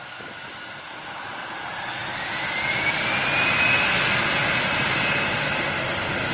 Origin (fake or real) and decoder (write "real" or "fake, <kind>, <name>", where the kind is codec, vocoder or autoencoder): real